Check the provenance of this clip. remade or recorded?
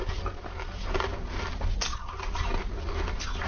recorded